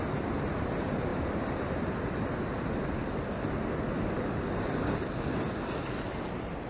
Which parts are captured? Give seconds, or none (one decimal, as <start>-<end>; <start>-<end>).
0.0-6.7